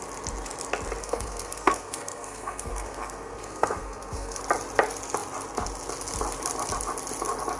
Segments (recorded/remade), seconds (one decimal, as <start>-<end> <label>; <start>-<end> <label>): 0.0-1.0 recorded; 1.0-4.4 remade; 4.4-7.6 recorded